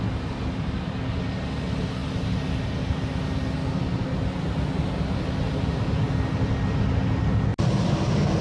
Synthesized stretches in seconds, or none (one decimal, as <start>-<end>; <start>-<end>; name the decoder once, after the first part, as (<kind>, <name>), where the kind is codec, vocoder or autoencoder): none